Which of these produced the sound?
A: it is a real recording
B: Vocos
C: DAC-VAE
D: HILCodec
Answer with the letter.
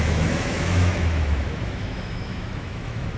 C